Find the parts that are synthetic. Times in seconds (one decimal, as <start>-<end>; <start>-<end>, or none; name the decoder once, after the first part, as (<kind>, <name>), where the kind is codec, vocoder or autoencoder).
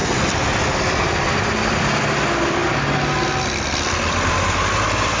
1.3-2.6 (vocoder, BigVGAN v2); 4.1-5.2